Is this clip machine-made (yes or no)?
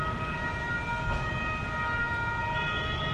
no